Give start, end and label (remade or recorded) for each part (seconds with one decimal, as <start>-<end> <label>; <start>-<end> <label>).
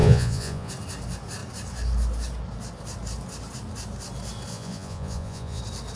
0.0-0.7 remade; 0.7-4.5 recorded; 4.5-5.6 remade; 5.6-6.0 recorded